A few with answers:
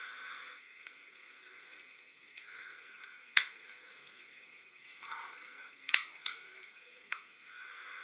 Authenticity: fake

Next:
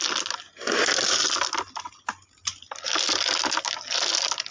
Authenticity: real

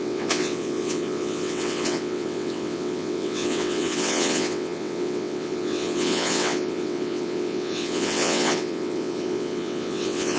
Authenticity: fake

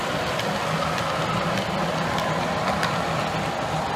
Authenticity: real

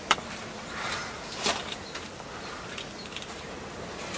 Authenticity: fake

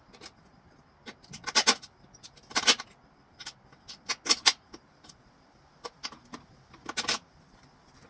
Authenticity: real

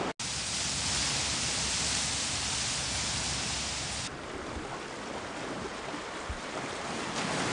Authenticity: real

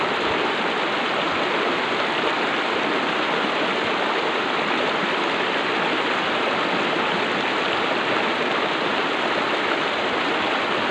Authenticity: real